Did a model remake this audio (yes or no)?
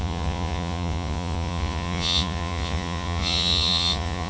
yes